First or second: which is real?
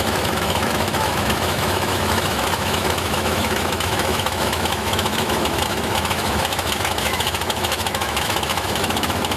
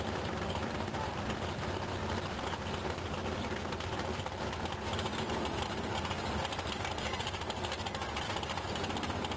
second